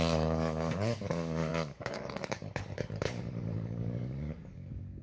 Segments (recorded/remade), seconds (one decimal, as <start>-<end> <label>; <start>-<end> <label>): 0.0-5.0 remade